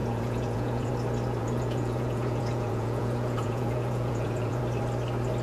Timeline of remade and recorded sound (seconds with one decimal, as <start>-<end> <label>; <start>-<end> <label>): 0.0-0.9 remade; 0.9-1.4 recorded; 1.4-4.6 remade; 4.6-5.4 recorded